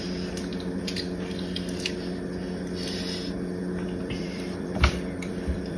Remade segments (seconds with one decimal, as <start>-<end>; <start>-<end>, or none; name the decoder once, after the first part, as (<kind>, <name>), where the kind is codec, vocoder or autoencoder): 0.0-0.5 (vocoder, BigVGAN v2); 4.0-5.8